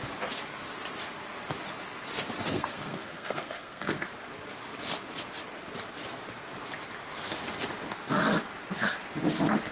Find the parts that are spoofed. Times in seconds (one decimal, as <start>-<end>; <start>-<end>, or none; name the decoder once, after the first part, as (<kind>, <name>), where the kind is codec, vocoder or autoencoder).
2.5-4.1 (codec, SNAC)

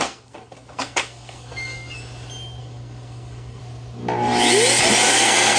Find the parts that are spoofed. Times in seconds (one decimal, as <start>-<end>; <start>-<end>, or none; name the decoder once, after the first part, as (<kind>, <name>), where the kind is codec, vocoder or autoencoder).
0.0-2.0 (codec, SNAC); 2.6-3.6; 5.1-5.6

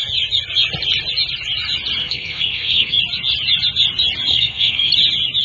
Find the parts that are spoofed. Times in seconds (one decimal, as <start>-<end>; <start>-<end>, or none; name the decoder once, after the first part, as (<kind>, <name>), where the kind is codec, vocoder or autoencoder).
2.0-3.0 (codec, SNAC); 4.3-4.9

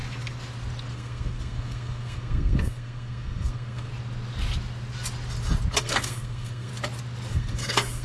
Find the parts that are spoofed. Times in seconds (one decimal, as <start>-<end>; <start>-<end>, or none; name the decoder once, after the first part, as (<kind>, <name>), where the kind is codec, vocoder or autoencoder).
0.9-3.9 (codec, SNAC); 5.8-6.7; 7.3-8.0

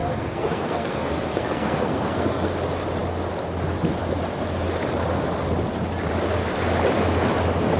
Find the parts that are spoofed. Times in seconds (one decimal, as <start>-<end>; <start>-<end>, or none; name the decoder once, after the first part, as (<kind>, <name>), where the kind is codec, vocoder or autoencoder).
0.0-2.5 (codec, SNAC)

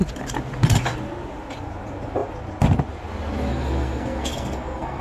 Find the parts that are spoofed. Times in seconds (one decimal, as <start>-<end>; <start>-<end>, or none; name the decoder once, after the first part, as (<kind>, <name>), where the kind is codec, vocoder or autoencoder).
3.5-5.0 (codec, SNAC)